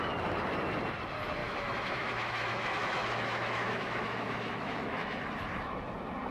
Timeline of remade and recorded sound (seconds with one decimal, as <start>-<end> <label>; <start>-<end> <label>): 0.0-1.4 recorded; 1.4-5.2 remade; 5.2-6.3 recorded